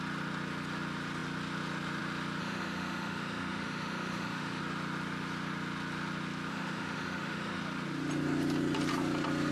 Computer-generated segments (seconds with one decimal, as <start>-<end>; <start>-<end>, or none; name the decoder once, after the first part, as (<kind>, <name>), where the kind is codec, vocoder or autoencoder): 2.4-4.6 (autoencoder, DAC-VAE); 6.5-7.6